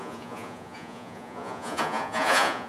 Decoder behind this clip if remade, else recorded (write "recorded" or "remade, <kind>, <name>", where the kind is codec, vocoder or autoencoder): remade, vocoder, Vocos